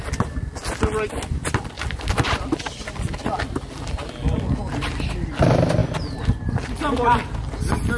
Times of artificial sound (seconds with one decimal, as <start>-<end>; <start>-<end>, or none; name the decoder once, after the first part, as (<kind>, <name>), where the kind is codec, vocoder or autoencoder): none